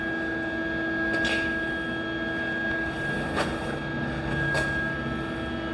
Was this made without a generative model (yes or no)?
yes